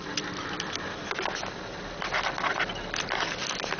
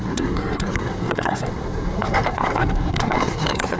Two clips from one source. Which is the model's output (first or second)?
second